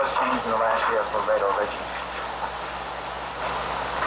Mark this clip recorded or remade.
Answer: recorded